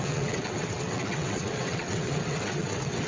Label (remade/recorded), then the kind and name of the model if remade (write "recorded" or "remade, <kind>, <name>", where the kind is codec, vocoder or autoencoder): remade, vocoder, WaveNeXt